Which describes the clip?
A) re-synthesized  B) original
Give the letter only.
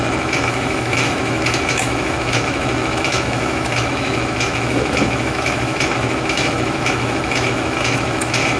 A